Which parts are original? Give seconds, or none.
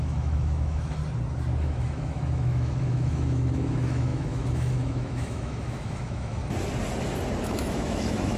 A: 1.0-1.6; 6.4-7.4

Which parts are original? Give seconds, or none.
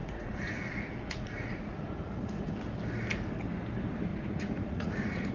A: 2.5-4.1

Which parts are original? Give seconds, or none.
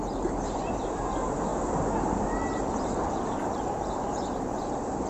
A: 0.0-5.1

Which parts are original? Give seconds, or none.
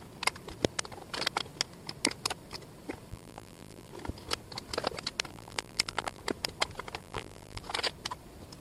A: 0.0-3.1; 3.9-5.3; 6.2-7.0; 7.6-8.6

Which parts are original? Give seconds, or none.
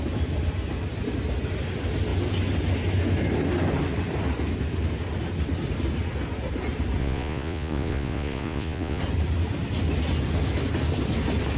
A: 0.0-7.0; 9.0-11.6